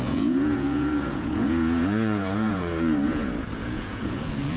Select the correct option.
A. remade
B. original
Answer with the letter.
A